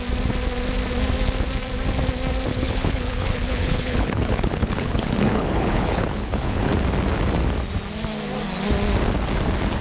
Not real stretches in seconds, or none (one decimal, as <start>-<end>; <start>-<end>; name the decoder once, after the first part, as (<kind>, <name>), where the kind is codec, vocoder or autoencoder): 2.5-6.7 (codec, HILCodec)